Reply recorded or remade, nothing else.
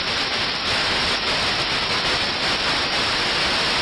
recorded